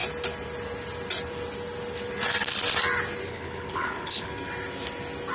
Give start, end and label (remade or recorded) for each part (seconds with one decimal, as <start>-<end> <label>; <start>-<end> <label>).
0.0-3.3 recorded; 3.3-4.3 remade; 4.3-5.3 recorded